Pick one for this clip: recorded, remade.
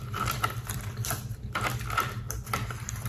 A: remade